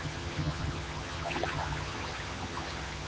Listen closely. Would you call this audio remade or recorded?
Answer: remade